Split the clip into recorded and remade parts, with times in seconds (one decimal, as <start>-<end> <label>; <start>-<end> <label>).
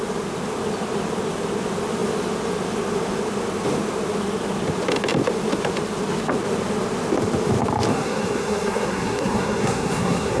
0.0-7.9 recorded; 7.9-10.4 remade